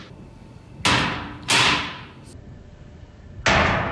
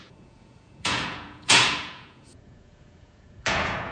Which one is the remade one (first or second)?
second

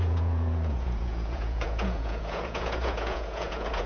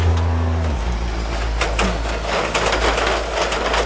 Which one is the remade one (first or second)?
first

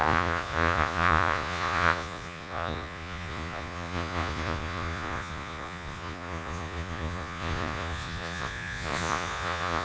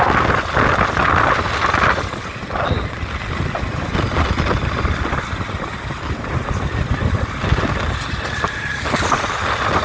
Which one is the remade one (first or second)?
first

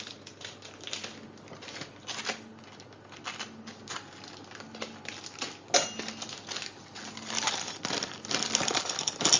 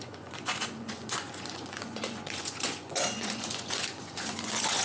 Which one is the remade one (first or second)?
second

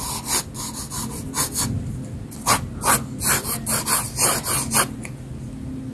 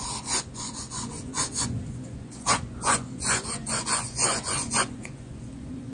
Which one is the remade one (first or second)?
second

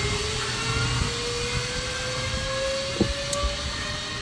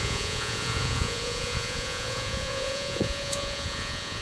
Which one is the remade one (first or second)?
second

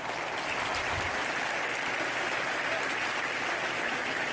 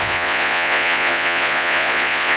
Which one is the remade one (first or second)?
second